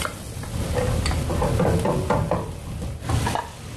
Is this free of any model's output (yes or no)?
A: yes